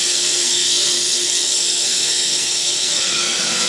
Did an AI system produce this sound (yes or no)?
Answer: yes